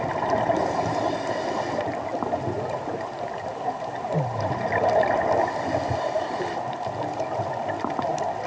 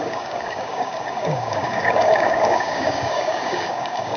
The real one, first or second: first